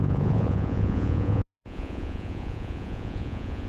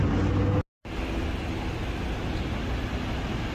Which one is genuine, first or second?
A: second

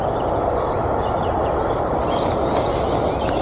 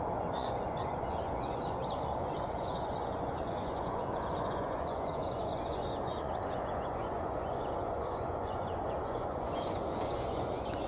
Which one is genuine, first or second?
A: first